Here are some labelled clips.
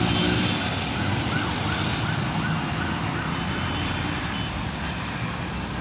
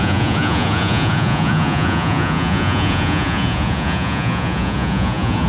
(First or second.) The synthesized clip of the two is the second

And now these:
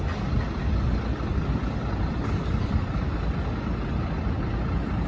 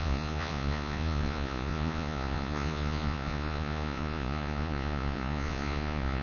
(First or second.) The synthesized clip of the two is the second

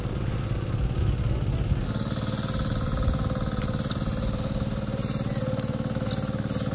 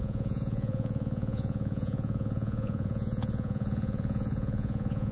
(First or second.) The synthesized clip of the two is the second